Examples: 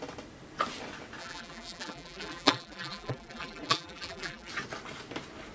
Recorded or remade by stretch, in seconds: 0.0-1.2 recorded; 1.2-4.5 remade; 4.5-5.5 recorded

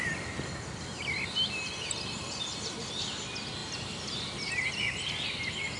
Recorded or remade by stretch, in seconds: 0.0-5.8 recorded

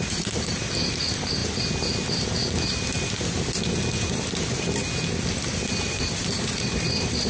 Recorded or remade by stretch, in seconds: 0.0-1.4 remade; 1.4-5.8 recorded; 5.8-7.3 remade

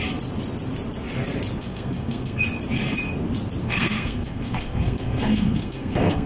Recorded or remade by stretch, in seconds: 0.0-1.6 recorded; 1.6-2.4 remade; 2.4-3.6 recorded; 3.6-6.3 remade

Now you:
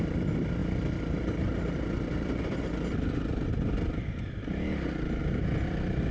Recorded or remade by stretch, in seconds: 0.0-6.1 recorded

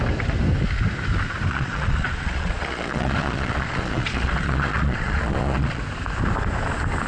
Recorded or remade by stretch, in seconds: 0.0-1.5 recorded; 1.5-5.8 remade; 5.8-7.1 recorded